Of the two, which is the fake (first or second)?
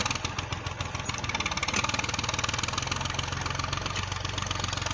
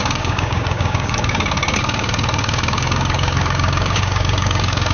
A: second